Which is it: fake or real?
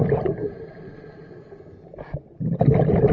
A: real